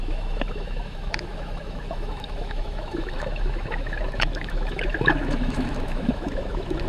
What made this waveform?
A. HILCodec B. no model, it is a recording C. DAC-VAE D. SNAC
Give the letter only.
C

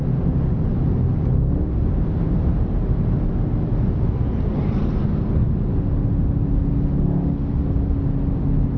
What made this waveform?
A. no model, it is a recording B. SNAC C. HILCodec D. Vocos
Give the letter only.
A